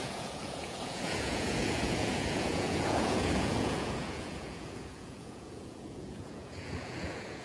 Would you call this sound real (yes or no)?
no